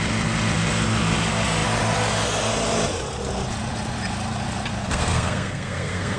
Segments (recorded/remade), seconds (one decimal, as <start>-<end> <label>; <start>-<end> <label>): 0.0-4.8 recorded; 4.8-6.2 remade